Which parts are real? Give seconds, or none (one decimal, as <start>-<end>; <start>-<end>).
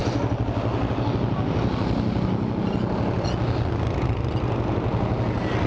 0.0-5.7